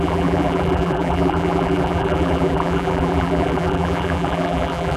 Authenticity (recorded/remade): remade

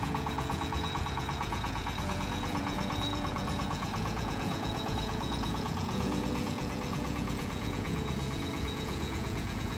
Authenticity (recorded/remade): remade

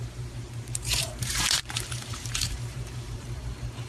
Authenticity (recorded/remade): remade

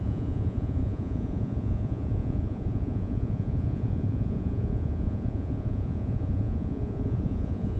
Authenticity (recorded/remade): remade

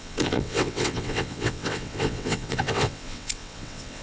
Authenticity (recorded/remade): remade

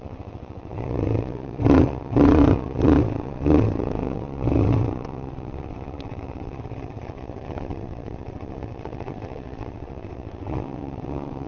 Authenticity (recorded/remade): remade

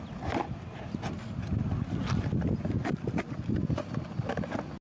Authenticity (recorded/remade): recorded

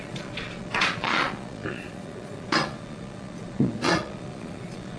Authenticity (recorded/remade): remade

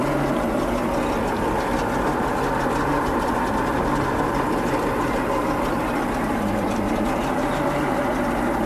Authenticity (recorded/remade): recorded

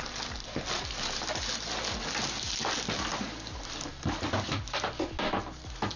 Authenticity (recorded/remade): recorded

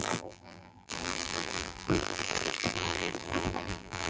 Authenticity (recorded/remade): remade